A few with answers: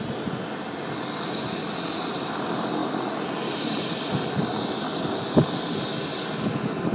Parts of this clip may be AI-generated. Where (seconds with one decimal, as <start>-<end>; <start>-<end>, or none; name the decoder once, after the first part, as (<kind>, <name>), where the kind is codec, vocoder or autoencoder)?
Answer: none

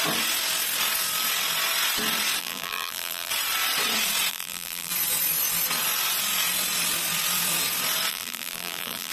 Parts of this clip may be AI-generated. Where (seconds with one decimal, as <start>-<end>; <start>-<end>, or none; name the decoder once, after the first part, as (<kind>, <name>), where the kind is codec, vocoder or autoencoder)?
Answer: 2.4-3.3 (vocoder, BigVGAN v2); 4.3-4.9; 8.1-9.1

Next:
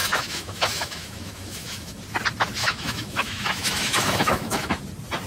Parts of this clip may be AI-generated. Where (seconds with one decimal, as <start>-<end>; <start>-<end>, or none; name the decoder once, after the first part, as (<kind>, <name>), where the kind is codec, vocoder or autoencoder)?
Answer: 0.0-2.0 (autoencoder, DAC-VAE); 2.6-4.8